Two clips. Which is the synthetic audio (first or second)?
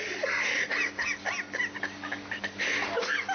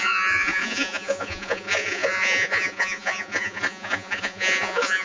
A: second